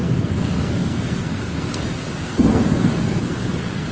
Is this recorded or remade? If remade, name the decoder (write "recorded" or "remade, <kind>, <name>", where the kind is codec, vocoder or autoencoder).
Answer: remade, codec, SNAC